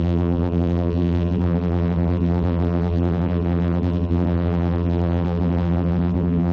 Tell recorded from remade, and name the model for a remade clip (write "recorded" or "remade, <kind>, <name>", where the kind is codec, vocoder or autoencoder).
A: remade, vocoder, BigVGAN v2